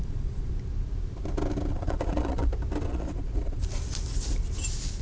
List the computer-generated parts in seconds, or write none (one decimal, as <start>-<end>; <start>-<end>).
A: 0.0-0.5; 1.7-2.5; 2.9-3.6